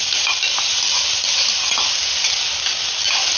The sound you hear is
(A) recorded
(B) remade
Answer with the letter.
A